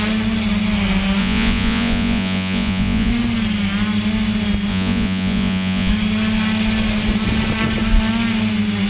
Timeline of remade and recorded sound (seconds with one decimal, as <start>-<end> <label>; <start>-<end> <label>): 0.0-1.2 recorded; 1.2-3.1 remade; 3.1-4.7 recorded; 4.7-5.9 remade; 5.9-8.9 recorded